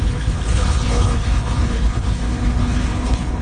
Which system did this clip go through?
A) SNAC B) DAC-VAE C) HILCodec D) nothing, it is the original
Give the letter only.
C